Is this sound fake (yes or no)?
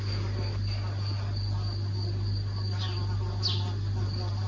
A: no